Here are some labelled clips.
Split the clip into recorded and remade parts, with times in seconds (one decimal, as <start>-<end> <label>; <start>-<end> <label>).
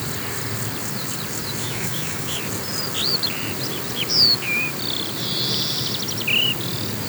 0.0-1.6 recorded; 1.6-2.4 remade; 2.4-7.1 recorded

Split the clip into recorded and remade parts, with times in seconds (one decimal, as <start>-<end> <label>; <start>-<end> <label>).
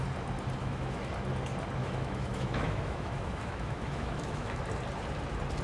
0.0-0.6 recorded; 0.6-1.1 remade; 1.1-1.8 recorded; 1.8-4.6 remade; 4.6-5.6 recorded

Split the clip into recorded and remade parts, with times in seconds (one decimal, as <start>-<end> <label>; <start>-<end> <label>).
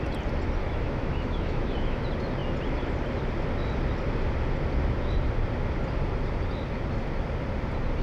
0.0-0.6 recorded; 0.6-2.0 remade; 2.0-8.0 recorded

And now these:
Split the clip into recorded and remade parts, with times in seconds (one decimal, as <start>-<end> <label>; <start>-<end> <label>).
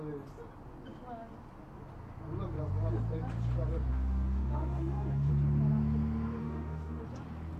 0.0-3.9 recorded; 3.9-5.3 remade; 5.3-6.4 recorded; 6.4-7.0 remade; 7.0-7.6 recorded